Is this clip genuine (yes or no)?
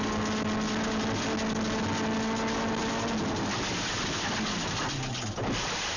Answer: yes